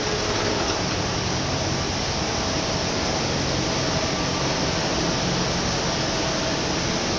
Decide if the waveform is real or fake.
real